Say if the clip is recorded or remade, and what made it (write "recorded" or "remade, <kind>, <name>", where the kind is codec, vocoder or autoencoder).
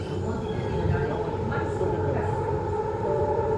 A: remade, vocoder, BigVGAN v2